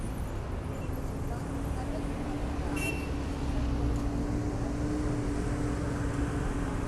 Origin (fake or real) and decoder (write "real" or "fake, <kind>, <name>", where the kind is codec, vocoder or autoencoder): real